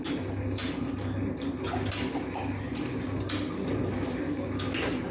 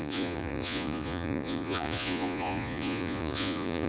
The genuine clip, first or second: first